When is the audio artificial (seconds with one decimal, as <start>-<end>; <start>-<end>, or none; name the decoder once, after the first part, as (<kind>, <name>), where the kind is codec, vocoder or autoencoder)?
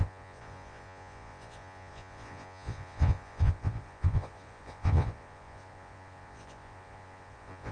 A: 0.0-7.7 (vocoder, Vocos)